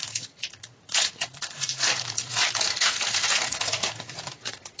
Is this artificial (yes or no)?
yes